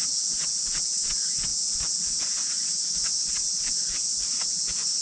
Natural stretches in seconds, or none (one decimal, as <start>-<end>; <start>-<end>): none